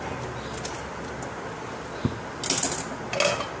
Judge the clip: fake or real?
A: real